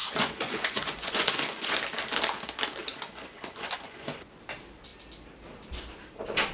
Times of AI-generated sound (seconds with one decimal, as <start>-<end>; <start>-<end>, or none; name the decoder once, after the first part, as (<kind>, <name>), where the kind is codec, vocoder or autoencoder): 0.0-1.8 (vocoder, Vocos); 2.9-4.4

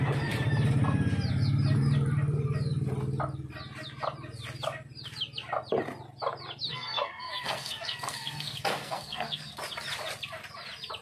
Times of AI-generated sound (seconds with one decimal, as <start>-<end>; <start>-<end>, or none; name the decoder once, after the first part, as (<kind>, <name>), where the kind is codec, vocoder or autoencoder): 6.7-9.5 (codec, SNAC)